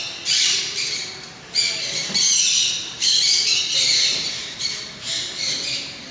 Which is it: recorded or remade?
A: remade